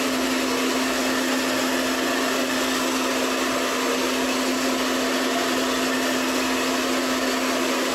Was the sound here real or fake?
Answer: real